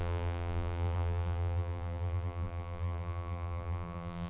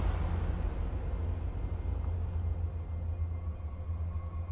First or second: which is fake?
first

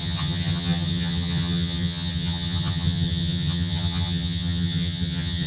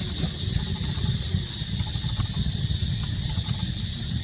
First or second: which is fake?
first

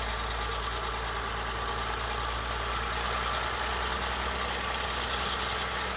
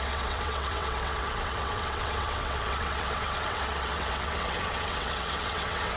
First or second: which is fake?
second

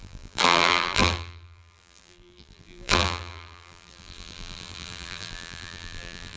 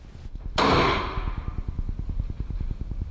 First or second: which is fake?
first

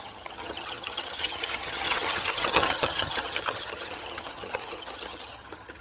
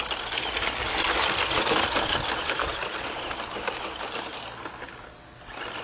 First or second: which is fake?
first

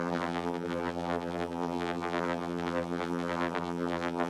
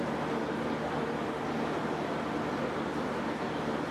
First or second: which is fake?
first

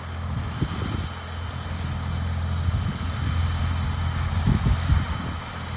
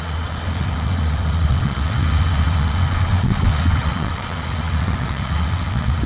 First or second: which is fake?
second